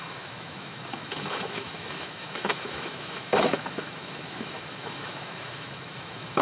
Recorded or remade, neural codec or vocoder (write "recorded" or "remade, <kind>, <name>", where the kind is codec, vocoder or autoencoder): remade, autoencoder, DAC-VAE